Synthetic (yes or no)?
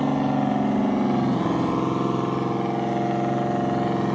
no